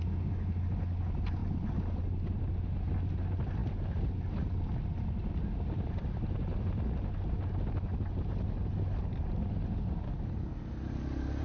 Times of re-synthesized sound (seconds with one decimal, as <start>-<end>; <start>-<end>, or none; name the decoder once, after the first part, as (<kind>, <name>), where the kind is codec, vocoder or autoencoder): none